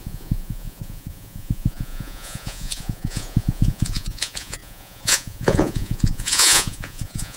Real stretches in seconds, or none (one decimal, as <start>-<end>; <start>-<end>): none